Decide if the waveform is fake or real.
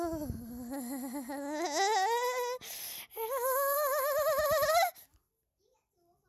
real